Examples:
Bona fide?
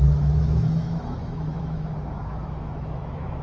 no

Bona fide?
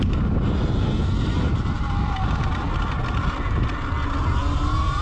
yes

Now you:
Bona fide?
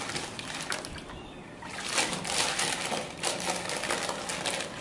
yes